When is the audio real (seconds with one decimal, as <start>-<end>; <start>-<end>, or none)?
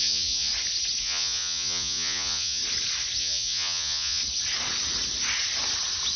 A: 0.5-1.0; 2.6-3.2; 4.2-6.2